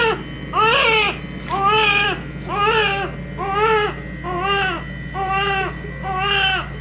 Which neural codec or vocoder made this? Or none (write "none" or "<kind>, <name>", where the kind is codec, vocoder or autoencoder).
none